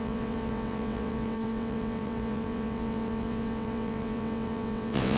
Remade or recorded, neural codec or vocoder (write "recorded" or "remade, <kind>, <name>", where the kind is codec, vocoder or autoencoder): remade, vocoder, WaveNeXt